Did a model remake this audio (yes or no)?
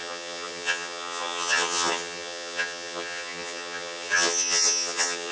yes